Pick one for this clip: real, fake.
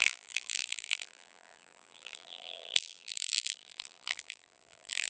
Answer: fake